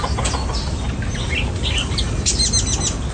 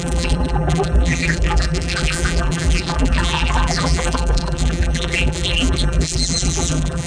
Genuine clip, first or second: first